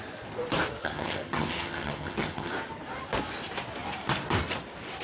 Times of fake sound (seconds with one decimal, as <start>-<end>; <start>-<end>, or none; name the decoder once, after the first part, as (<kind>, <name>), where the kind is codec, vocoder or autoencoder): 0.8-2.5 (vocoder, HiFi-GAN)